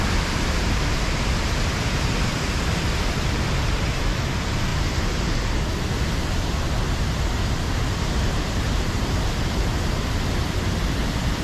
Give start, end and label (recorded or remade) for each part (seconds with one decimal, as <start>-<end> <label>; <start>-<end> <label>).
0.0-4.7 remade; 4.7-8.0 recorded; 8.0-11.4 remade